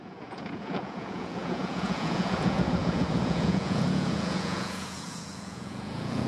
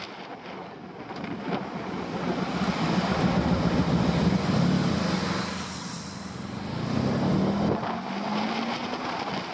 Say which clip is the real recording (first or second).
second